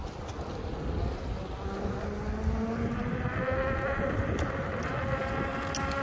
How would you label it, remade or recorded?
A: recorded